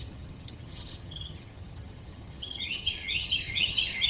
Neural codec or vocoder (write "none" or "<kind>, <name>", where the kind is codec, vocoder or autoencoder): vocoder, HiFi-GAN